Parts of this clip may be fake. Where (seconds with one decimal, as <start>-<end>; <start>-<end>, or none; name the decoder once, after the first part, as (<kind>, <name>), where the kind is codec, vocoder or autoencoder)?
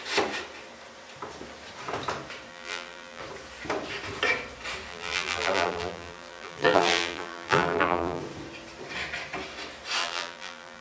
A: 2.5-3.2 (vocoder, BigVGAN v2); 4.9-8.2; 10.0-10.8